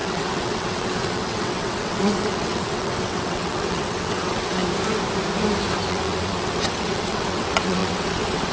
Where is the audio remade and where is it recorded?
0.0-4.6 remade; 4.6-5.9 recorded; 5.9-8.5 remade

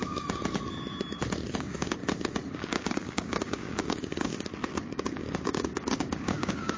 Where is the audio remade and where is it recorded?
0.0-0.4 remade; 0.4-1.6 recorded; 1.6-2.0 remade; 2.0-2.5 recorded; 2.5-4.3 remade; 4.3-4.9 recorded; 4.9-6.8 remade

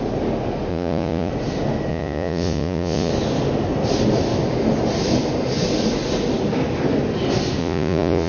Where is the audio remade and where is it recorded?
0.0-0.7 recorded; 0.7-1.3 remade; 1.3-1.9 recorded; 1.9-3.1 remade; 3.1-7.6 recorded; 7.6-8.3 remade